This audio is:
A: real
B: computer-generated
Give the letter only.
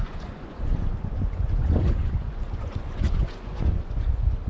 B